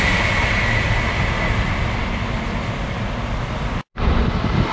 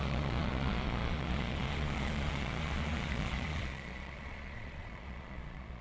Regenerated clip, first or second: second